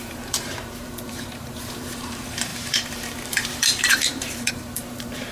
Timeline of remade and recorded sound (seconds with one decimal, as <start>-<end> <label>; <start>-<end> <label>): 0.0-5.3 remade